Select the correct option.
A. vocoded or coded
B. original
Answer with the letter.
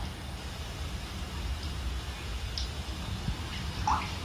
B